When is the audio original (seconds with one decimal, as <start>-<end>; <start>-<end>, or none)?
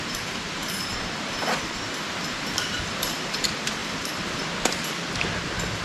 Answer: 0.9-2.7; 3.8-5.8